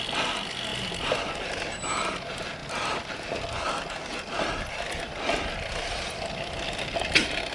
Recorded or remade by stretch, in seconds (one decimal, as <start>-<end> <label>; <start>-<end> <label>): 0.0-7.5 recorded